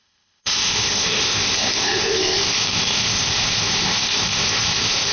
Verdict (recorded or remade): remade